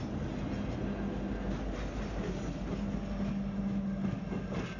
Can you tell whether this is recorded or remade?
recorded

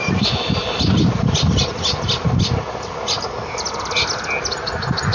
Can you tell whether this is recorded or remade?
recorded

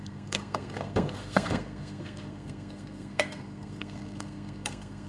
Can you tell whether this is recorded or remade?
remade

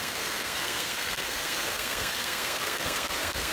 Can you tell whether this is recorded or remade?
remade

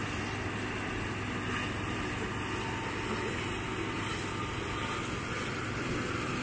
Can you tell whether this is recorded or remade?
recorded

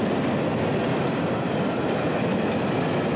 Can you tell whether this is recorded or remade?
recorded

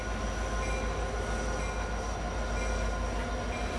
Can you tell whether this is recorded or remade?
recorded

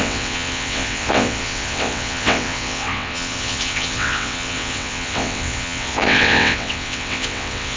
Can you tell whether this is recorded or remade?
remade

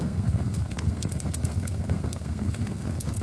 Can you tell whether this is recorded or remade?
remade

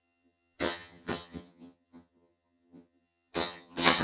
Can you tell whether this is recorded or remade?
remade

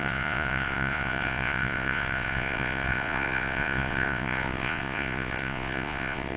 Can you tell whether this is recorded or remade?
remade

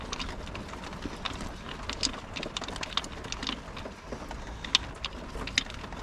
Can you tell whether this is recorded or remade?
recorded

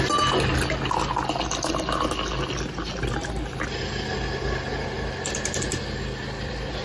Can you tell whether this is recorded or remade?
recorded